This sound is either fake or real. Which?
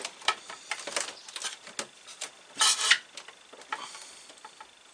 real